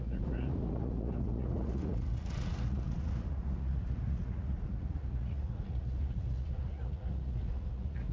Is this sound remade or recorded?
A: remade